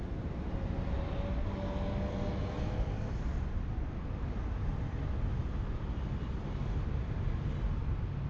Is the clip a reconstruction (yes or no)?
no